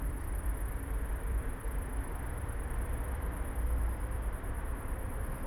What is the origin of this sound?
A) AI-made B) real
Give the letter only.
A